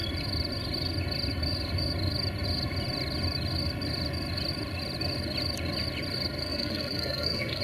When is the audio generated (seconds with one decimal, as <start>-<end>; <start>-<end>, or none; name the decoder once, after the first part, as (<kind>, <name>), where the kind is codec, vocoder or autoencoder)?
6.4-7.6 (codec, SNAC)